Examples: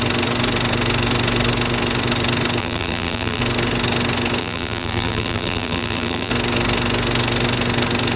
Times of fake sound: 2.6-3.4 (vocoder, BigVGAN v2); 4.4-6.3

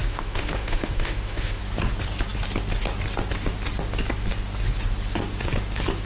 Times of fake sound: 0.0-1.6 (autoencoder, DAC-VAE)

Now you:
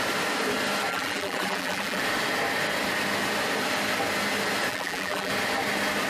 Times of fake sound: 0.9-2.0 (vocoder, BigVGAN v2); 4.7-5.3

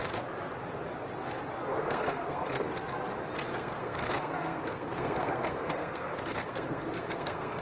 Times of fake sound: 1.7-2.7 (codec, SNAC); 3.5-7.6